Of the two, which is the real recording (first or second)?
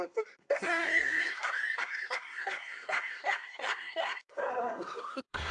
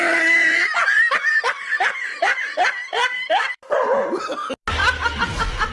second